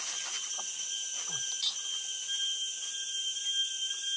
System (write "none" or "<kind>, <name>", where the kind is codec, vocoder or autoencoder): none